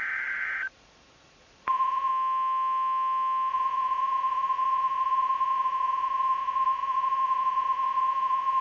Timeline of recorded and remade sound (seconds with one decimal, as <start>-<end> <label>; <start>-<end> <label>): 0.0-2.1 remade; 2.1-3.5 recorded; 3.5-8.6 remade